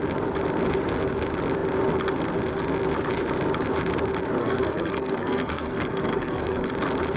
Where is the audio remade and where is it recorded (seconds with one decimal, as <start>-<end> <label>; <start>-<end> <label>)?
0.0-4.4 recorded; 4.4-6.7 remade; 6.7-7.2 recorded

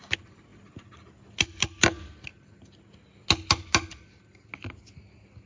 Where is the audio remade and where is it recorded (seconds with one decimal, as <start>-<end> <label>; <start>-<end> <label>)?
0.0-5.5 recorded

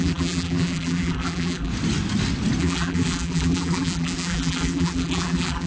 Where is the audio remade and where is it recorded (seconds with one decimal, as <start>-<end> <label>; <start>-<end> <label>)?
0.0-1.7 remade; 1.7-2.6 recorded; 2.6-5.7 remade

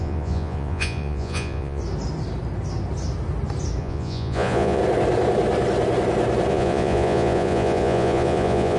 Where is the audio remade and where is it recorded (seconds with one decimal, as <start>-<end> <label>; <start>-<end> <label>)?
0.0-1.8 remade; 1.8-3.8 recorded; 3.8-4.8 remade; 4.8-6.5 recorded; 6.5-8.8 remade